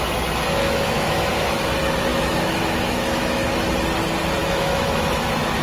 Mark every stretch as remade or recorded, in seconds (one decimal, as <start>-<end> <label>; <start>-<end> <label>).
0.0-0.6 recorded; 0.6-1.6 remade; 1.6-2.1 recorded; 2.1-3.6 remade; 3.6-4.4 recorded; 4.4-5.6 remade